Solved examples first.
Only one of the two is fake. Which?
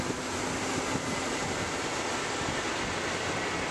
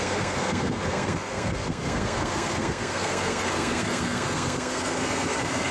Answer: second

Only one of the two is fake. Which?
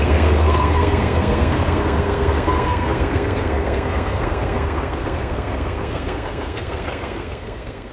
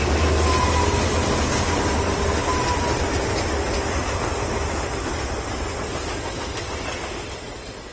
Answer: first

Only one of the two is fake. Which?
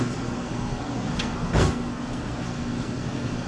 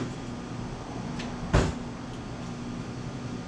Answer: first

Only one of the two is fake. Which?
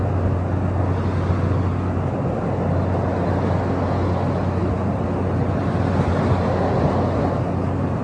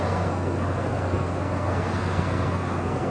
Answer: second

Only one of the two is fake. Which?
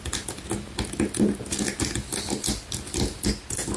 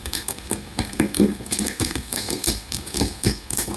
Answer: second